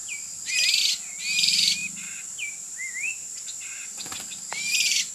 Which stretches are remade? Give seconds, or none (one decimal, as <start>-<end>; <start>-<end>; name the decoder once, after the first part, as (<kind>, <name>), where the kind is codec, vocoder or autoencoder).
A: 0.0-0.5 (vocoder, BigVGAN v2); 1.8-5.1